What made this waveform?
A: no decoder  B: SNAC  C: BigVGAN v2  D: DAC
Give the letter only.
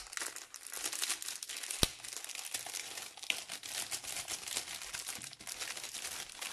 A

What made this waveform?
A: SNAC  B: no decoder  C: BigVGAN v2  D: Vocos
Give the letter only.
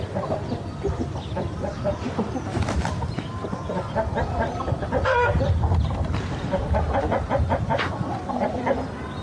C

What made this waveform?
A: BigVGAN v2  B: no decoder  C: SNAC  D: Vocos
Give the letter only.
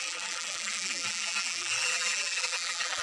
A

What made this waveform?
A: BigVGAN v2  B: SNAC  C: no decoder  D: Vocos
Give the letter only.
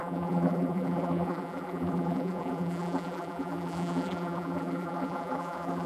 A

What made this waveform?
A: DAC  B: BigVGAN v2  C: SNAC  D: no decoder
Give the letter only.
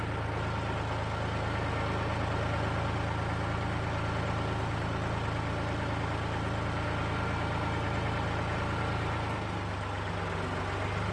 D